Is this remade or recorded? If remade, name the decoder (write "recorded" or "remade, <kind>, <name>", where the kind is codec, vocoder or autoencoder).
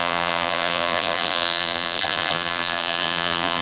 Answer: remade, vocoder, BigVGAN v2